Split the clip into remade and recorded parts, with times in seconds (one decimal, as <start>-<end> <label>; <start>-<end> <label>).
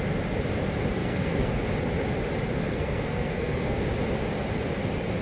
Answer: 0.0-1.0 recorded; 1.0-1.5 remade; 1.5-2.6 recorded; 2.6-3.8 remade; 3.8-5.2 recorded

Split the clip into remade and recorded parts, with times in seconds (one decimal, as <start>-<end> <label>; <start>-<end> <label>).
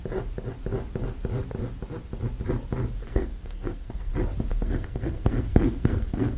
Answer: 0.0-3.0 recorded; 3.0-4.1 remade; 4.1-4.5 recorded; 4.5-6.4 remade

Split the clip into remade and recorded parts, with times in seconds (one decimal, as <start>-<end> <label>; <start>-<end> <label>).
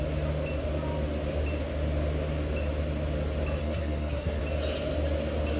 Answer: 0.0-3.6 recorded; 3.6-4.4 remade; 4.4-5.6 recorded